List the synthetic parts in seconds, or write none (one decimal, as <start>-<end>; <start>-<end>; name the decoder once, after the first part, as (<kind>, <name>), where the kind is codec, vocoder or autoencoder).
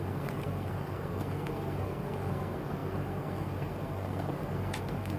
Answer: 0.0-5.2 (codec, SNAC)